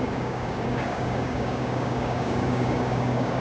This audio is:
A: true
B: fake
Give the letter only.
B